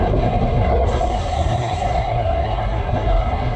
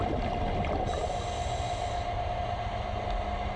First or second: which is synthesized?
first